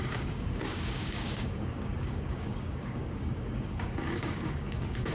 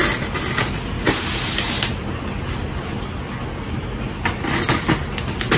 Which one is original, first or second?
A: second